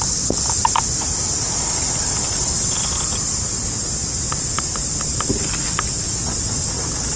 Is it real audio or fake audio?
real